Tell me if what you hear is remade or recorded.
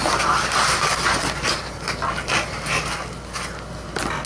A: recorded